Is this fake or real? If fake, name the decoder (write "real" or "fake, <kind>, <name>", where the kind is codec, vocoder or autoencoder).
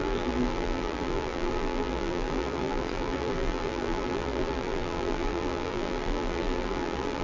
fake, vocoder, BigVGAN v2